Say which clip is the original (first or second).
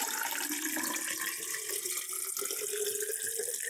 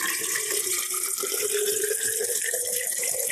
first